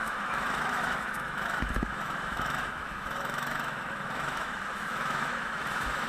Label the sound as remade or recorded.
remade